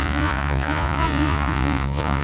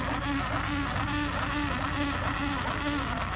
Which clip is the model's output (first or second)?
first